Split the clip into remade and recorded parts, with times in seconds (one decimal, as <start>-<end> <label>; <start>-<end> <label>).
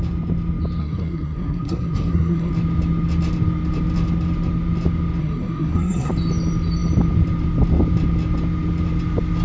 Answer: 0.0-0.8 recorded; 0.8-2.5 remade; 2.5-5.2 recorded; 5.2-6.1 remade; 6.1-9.4 recorded